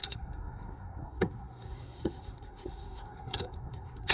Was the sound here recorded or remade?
remade